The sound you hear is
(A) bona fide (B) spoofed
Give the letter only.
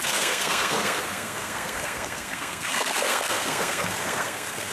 B